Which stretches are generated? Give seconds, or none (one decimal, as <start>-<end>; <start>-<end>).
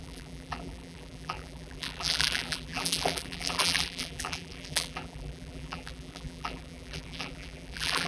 0.0-8.1